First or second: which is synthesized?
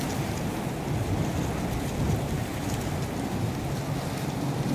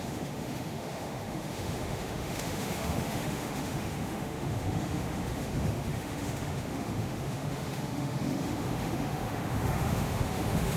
second